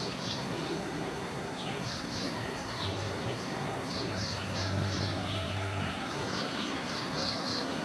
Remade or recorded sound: remade